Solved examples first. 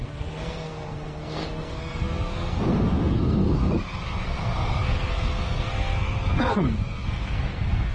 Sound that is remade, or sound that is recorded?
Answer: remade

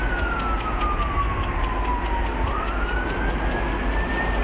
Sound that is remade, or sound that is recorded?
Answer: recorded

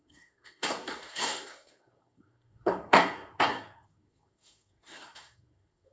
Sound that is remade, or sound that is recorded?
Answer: remade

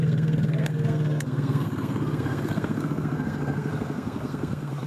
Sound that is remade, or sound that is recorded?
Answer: remade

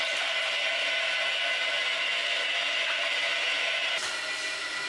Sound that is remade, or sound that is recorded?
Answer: recorded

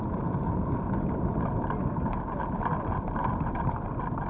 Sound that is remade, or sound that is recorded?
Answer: recorded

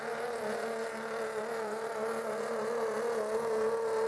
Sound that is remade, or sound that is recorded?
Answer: recorded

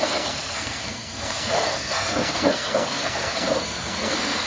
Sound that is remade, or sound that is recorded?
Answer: remade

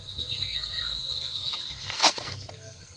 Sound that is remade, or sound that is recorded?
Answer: remade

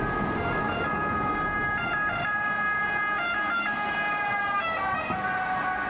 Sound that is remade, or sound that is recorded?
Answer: recorded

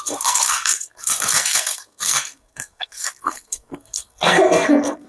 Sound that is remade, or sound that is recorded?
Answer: remade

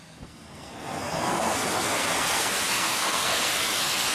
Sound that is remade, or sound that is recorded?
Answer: remade